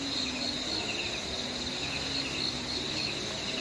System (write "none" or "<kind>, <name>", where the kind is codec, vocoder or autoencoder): none